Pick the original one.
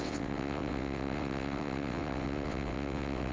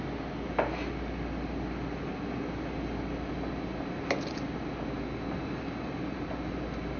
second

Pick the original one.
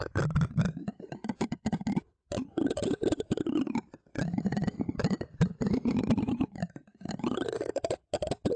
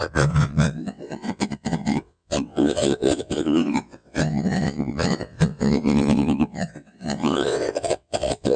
first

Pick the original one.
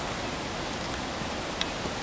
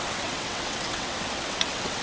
first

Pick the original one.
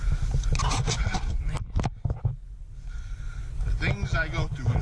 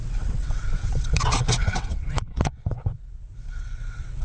first